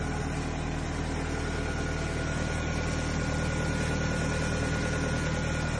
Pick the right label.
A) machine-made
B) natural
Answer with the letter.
B